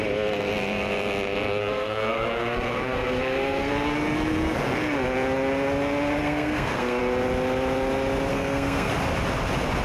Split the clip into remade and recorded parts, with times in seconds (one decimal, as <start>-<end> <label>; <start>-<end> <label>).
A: 0.0-1.6 recorded; 1.6-3.7 remade; 3.7-6.2 recorded; 6.2-7.0 remade; 7.0-8.3 recorded; 8.3-8.9 remade; 8.9-9.8 recorded